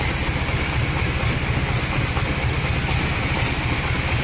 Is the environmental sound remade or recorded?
recorded